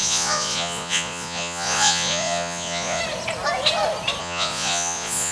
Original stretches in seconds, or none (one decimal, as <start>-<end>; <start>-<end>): 3.0-4.2